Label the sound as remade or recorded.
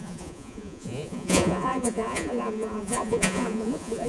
remade